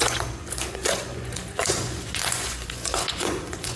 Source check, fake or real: fake